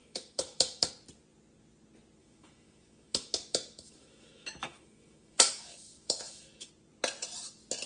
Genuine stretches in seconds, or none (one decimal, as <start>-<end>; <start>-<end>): 0.9-2.2; 6.7-7.9